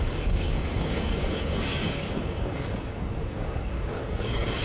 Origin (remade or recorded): remade